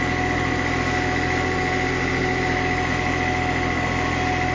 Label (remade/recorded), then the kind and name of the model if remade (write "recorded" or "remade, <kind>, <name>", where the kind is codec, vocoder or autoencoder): recorded